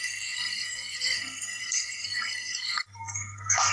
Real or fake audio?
fake